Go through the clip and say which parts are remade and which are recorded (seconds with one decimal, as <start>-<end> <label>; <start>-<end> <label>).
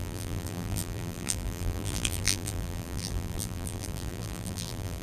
0.0-5.0 remade